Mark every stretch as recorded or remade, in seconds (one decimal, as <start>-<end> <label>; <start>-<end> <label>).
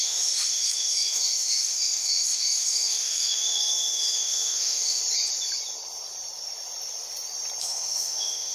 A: 0.0-5.0 remade; 5.0-7.6 recorded; 7.6-8.5 remade